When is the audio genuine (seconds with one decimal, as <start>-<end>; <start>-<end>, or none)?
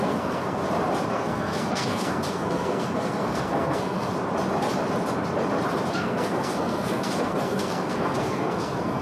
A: 0.6-1.1; 4.1-5.9